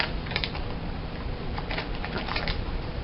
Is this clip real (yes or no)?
no